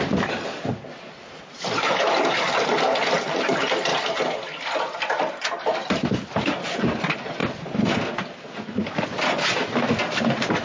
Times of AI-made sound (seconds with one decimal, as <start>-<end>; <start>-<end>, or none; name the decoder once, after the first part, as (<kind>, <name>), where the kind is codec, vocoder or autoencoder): 0.0-3.9 (vocoder, BigVGAN v2); 5.3-7.4